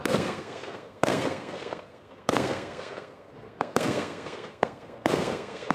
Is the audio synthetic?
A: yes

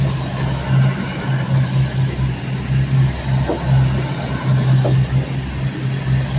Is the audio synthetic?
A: no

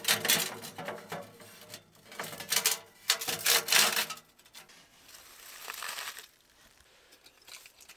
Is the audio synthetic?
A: no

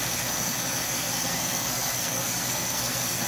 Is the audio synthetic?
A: yes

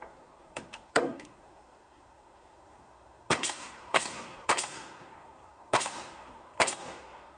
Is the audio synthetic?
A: yes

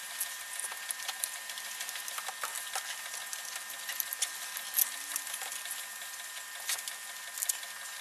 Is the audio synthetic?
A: no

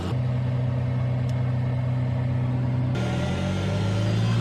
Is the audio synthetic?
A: no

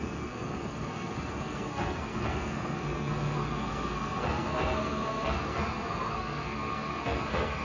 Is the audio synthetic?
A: yes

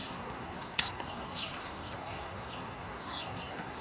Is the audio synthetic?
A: yes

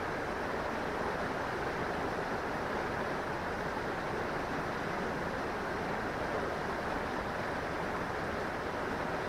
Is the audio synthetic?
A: no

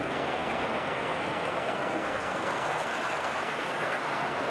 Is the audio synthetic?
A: yes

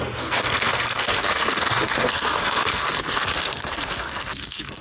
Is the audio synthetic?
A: yes